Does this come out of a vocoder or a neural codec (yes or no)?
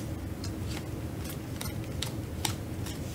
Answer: no